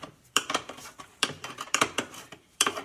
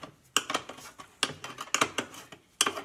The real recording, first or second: second